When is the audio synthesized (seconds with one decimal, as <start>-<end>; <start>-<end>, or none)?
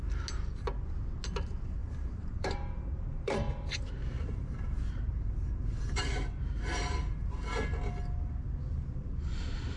1.8-6.4